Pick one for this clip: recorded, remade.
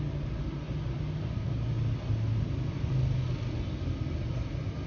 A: recorded